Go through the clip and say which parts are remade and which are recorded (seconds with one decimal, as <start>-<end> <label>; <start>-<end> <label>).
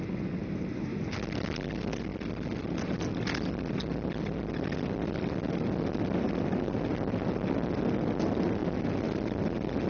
0.0-0.4 recorded; 0.4-1.1 remade; 1.1-9.9 recorded